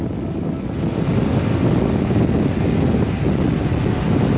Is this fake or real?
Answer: real